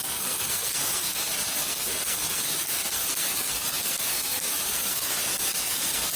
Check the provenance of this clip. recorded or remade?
remade